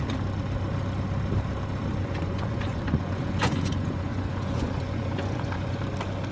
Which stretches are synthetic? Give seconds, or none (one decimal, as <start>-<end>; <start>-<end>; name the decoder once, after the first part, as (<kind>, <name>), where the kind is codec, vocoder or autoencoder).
2.0-5.8 (vocoder, Vocos)